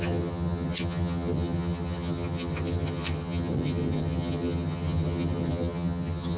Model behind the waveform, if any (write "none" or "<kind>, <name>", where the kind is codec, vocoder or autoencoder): vocoder, HiFi-GAN